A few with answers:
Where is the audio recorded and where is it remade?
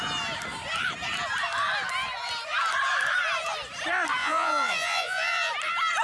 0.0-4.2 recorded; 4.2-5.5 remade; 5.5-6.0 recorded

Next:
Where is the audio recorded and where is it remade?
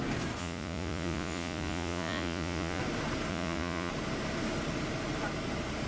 0.0-0.4 recorded; 0.4-2.8 remade; 2.8-3.3 recorded; 3.3-3.9 remade; 3.9-5.9 recorded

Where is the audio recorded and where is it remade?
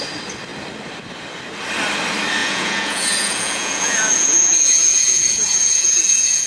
0.0-2.4 recorded; 2.4-6.5 remade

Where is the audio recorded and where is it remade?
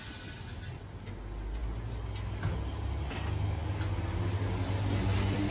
0.0-5.5 recorded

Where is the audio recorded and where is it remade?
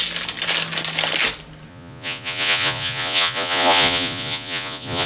0.0-1.7 recorded; 1.7-5.1 remade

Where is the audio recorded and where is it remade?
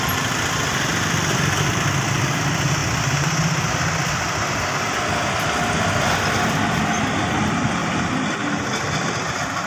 0.0-9.7 recorded